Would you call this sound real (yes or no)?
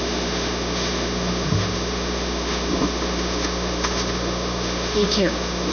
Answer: no